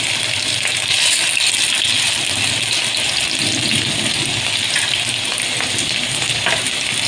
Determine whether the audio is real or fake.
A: real